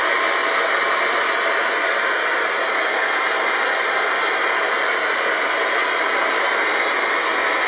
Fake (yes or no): no